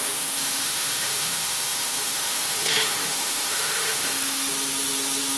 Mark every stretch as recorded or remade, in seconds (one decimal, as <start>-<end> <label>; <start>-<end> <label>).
0.0-4.5 remade; 4.5-5.4 recorded